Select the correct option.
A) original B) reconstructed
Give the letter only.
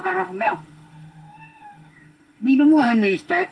B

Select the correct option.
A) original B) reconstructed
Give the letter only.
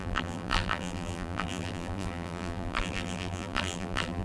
B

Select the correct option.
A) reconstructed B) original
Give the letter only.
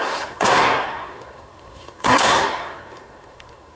A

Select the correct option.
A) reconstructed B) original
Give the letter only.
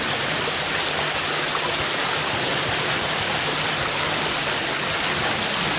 B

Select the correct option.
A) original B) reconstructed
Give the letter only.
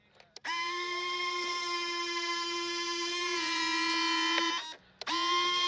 A